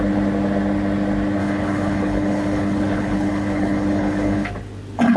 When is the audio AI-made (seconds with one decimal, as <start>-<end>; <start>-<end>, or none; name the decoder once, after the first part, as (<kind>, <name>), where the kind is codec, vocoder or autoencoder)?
1.4-4.5 (codec, HILCodec)